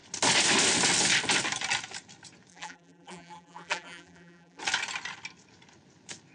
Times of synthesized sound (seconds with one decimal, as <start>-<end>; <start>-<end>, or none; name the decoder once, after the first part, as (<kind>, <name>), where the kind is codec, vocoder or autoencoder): 2.5-4.6 (vocoder, BigVGAN v2)